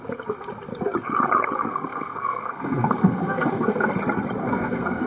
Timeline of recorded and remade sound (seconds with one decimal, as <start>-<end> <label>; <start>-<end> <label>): 0.0-1.7 recorded; 1.7-3.9 remade; 3.9-4.4 recorded; 4.4-5.1 remade